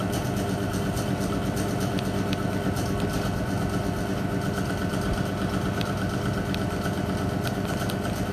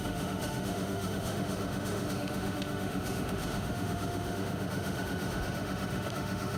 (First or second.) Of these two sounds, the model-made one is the second